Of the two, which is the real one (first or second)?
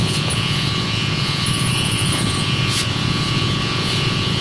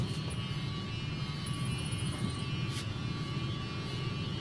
second